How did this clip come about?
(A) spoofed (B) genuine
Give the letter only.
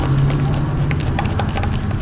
B